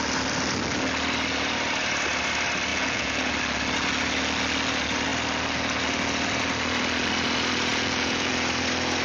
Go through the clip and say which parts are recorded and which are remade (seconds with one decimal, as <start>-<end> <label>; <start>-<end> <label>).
0.0-2.7 recorded; 2.7-3.3 remade; 3.3-7.7 recorded; 7.7-8.3 remade; 8.3-9.0 recorded